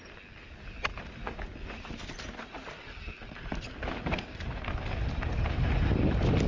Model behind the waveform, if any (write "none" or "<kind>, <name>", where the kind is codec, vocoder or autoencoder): none